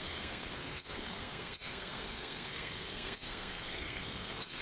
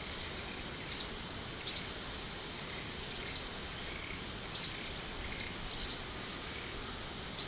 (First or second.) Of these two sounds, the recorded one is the second